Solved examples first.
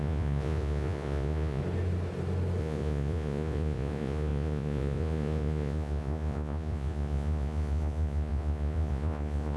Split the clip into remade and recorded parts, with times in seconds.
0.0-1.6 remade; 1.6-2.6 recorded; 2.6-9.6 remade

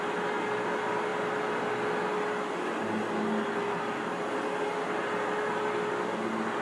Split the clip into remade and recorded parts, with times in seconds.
0.0-6.6 recorded